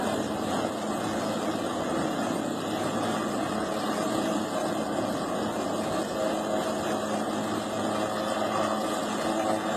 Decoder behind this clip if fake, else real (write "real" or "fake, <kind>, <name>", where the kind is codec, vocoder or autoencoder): real